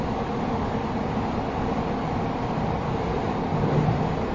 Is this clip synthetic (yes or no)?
no